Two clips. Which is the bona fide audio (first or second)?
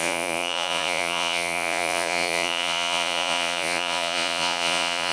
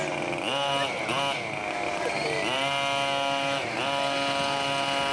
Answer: second